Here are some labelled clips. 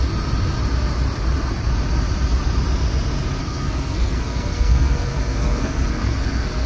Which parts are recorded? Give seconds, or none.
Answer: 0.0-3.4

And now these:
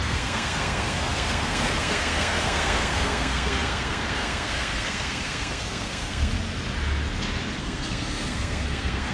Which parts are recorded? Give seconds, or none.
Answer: 6.3-7.6

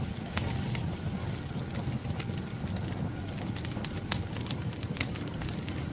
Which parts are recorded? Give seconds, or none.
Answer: 0.0-5.9

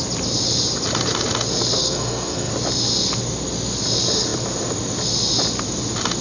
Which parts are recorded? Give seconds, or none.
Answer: 0.0-1.8; 2.5-6.2

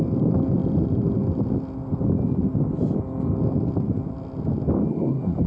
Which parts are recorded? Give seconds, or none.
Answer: 0.0-4.9

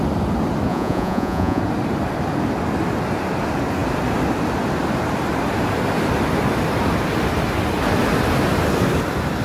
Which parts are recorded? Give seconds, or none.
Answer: 0.0-0.7; 1.6-9.4

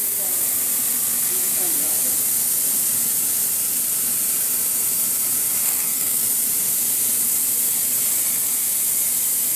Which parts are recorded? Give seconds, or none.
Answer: 0.0-5.6; 6.2-9.6